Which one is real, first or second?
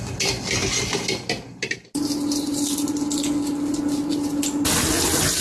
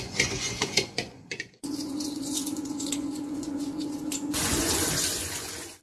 first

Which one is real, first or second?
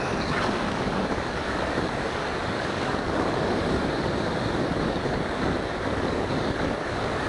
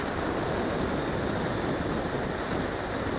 second